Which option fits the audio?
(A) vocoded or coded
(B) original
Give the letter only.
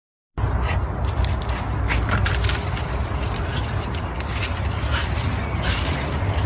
B